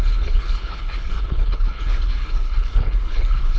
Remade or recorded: remade